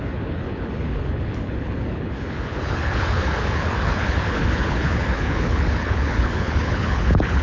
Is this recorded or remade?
remade